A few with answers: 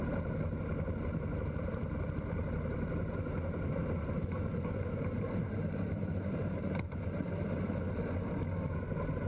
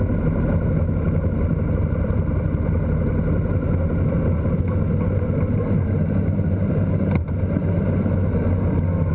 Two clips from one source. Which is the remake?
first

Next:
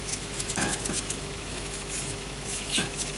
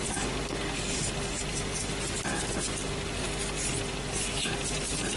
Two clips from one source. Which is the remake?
first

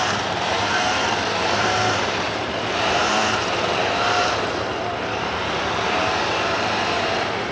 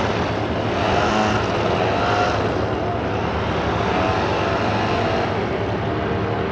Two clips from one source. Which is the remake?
first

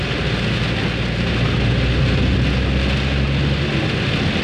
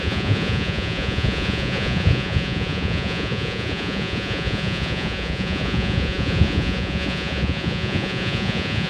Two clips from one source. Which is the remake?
second